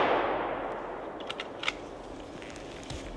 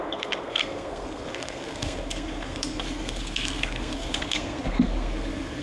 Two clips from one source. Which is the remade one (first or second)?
second